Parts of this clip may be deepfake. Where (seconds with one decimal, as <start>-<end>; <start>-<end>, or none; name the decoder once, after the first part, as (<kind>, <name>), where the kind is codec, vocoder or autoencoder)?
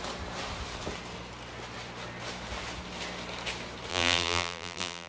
3.9-5.1 (vocoder, BigVGAN v2)